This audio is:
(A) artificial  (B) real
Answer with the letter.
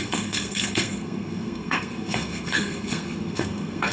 A